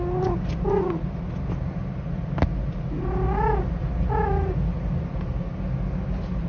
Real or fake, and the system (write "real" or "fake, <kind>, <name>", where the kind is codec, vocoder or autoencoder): real